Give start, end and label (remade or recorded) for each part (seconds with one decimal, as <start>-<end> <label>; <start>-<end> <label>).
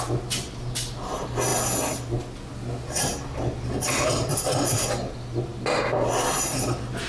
0.0-7.1 recorded